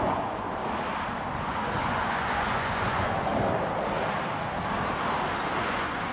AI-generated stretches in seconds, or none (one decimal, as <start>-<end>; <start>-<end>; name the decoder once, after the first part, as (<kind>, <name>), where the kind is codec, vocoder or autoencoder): 0.0-0.6 (vocoder, Vocos); 1.3-3.3; 5.6-6.1